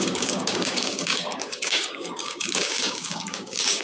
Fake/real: fake